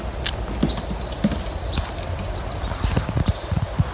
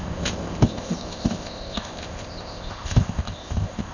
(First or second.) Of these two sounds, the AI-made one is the second